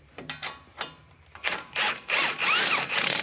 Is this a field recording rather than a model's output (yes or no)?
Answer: no